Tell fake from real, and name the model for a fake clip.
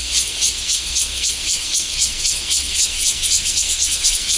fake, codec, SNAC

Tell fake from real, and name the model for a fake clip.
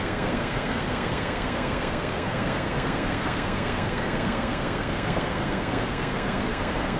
fake, codec, SNAC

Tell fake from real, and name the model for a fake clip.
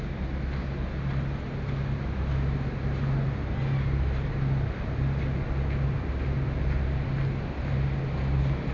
real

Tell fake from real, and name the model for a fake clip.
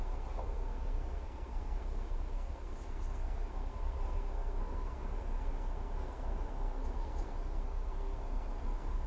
fake, codec, SNAC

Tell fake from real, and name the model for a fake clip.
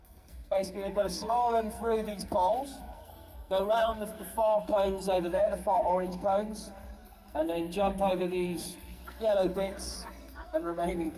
fake, codec, SNAC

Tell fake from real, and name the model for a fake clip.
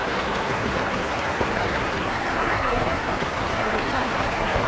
fake, codec, SNAC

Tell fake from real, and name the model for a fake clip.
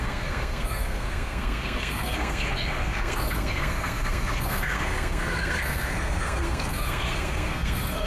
fake, codec, SNAC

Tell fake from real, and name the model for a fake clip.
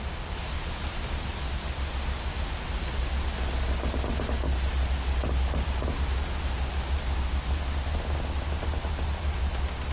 real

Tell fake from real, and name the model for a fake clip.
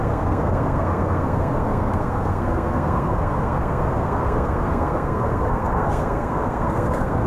fake, codec, SNAC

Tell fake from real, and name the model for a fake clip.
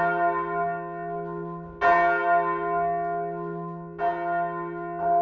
real